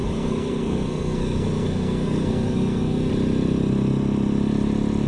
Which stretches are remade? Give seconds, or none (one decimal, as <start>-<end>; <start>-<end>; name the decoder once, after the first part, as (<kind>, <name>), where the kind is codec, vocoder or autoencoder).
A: 0.0-3.1 (codec, SNAC)